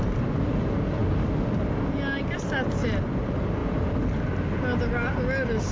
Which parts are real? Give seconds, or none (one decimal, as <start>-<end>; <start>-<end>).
0.0-5.7